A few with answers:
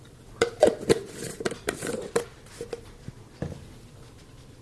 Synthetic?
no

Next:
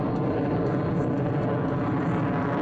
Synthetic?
no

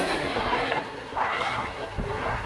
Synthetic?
yes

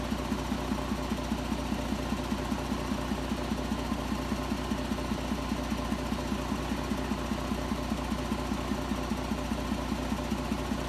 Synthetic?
no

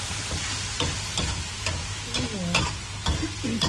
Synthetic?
no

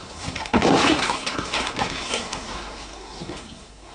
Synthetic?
yes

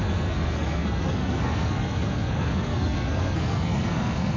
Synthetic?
yes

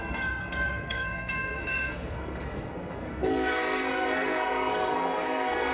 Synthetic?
yes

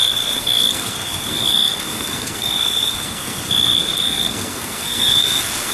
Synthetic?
yes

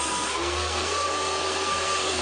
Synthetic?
yes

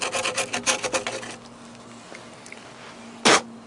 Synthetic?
no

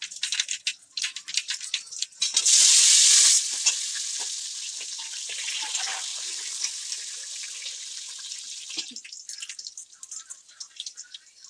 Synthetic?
no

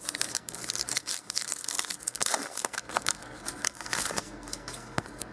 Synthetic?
yes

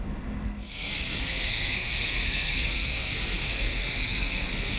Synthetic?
yes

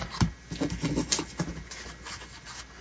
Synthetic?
no